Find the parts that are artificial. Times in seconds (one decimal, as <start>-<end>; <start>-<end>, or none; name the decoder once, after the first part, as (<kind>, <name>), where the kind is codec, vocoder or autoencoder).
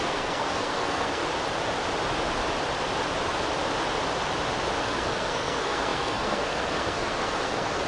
0.0-1.2 (codec, SNAC); 4.8-7.9